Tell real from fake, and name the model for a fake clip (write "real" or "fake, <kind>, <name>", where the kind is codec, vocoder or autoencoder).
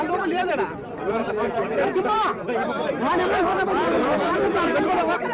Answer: fake, vocoder, BigVGAN v2